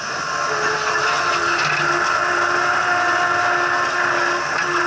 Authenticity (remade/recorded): recorded